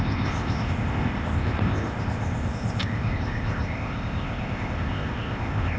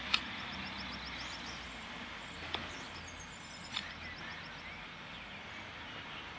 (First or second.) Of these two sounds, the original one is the second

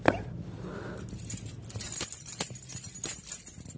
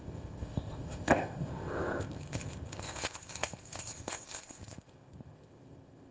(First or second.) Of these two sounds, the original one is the first